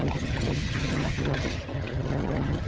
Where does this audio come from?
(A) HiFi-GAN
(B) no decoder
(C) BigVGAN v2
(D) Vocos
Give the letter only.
A